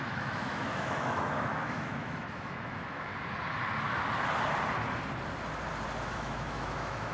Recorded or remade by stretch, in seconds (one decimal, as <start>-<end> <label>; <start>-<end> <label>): 0.0-3.1 remade; 3.1-6.0 recorded; 6.0-7.1 remade